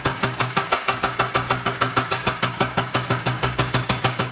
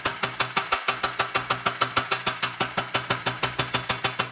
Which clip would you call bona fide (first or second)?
second